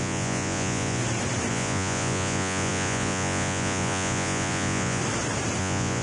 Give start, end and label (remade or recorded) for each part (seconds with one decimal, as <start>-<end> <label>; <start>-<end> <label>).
0.0-1.0 remade; 1.0-1.5 recorded; 1.5-5.0 remade; 5.0-5.6 recorded; 5.6-6.0 remade